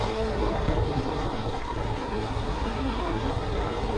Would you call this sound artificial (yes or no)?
yes